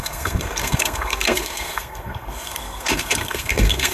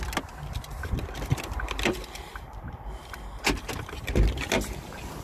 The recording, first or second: second